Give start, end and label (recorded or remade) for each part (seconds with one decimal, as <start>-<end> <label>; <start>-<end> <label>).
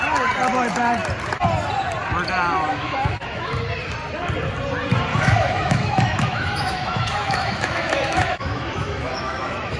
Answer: 0.0-2.7 recorded; 2.7-3.5 remade; 3.5-5.1 recorded; 5.1-9.8 remade